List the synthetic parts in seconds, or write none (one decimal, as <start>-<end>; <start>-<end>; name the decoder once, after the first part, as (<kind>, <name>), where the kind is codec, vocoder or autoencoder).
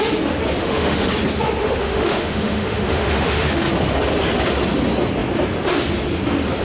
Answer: 0.6-1.1 (autoencoder, DAC-VAE); 1.6-3.6